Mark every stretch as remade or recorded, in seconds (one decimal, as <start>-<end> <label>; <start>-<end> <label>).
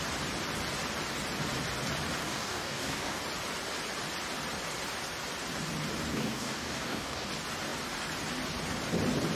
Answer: 0.0-2.2 recorded; 2.2-3.2 remade; 3.2-6.1 recorded; 6.1-7.3 remade; 7.3-9.4 recorded